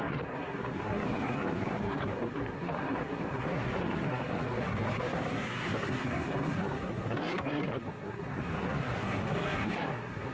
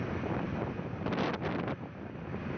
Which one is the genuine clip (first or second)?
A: second